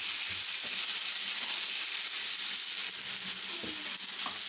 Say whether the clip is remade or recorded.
recorded